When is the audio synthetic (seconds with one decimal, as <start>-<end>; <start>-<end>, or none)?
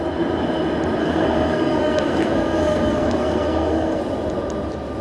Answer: 1.0-4.0